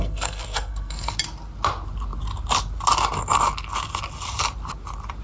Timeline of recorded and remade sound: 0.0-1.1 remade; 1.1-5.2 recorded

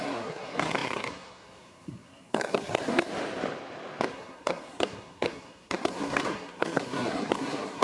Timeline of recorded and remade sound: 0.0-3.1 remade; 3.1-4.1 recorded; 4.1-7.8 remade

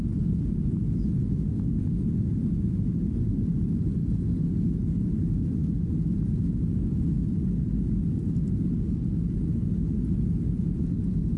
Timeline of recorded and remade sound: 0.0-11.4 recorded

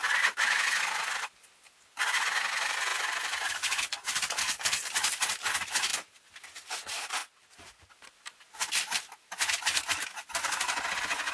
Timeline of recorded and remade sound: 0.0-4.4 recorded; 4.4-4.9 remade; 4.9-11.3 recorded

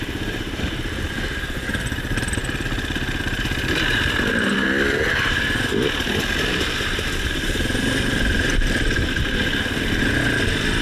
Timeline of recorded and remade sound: 0.0-2.4 remade; 2.4-3.2 recorded; 3.2-10.8 remade

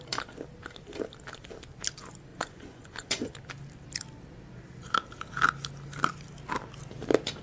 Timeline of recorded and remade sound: 0.0-2.3 recorded; 2.3-3.3 remade; 3.3-7.4 recorded